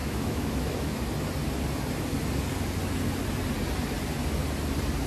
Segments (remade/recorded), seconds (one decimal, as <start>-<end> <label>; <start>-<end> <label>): 0.0-1.0 remade; 1.0-5.1 recorded